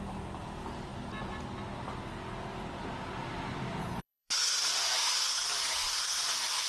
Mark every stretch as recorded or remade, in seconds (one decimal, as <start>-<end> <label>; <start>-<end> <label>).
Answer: 0.0-3.8 recorded; 3.8-4.5 remade; 4.5-6.7 recorded